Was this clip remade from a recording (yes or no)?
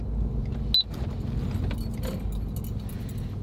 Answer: no